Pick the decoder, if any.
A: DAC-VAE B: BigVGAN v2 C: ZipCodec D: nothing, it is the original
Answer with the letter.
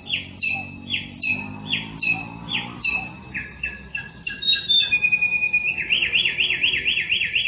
D